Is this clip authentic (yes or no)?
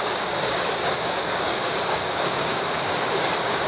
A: no